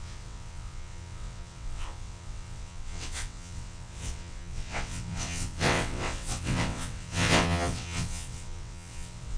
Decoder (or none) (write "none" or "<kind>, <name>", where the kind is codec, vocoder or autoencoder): vocoder, WaveNeXt